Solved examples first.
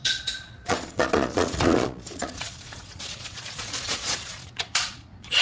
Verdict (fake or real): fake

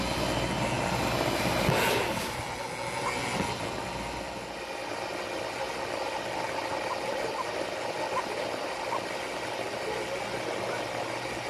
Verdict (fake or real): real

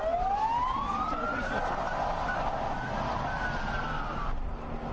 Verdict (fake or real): real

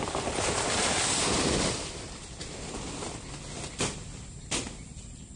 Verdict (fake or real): real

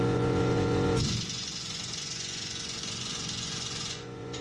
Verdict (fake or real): fake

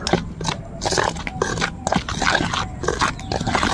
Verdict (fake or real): real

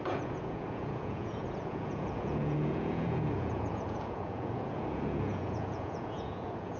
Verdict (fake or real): fake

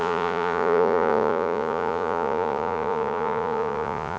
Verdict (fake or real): fake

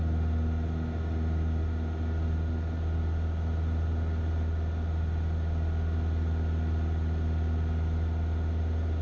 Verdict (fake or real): real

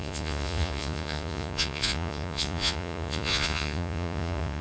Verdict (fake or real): fake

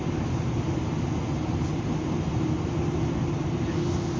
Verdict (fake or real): real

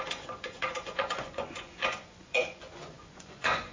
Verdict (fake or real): fake